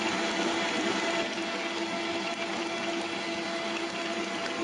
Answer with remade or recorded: recorded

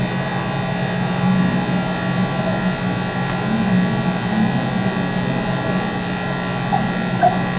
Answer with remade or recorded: recorded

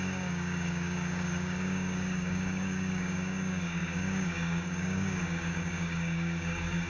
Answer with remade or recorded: remade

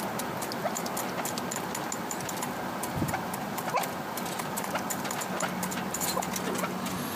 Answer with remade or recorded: recorded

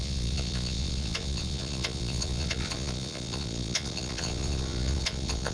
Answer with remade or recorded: remade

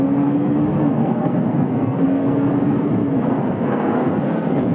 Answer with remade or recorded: remade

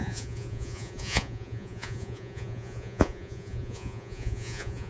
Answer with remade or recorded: remade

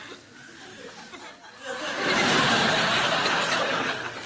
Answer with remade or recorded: recorded